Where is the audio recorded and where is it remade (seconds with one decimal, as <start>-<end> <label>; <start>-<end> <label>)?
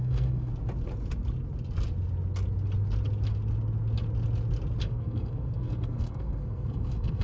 0.0-0.5 remade; 0.5-4.8 recorded; 4.8-7.2 remade